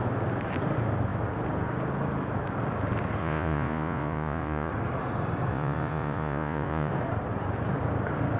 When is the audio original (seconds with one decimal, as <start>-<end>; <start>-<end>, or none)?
0.0-3.2; 4.7-5.5; 6.9-8.4